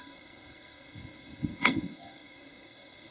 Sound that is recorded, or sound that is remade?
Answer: remade